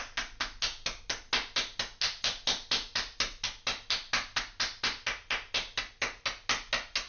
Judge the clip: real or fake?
real